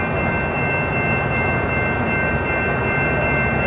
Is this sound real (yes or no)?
yes